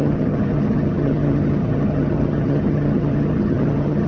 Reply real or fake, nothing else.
fake